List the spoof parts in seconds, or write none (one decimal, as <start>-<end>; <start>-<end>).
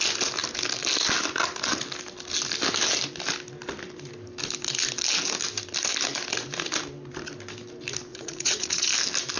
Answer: 8.1-8.9